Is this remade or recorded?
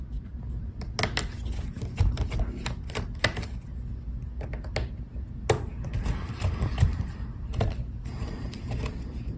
recorded